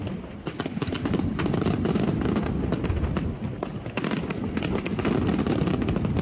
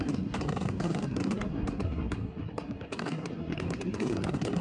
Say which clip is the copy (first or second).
second